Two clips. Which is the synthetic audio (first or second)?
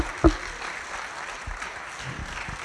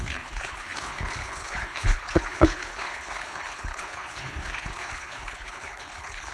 second